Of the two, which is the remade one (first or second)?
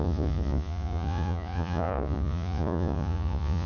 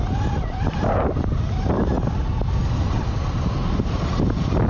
first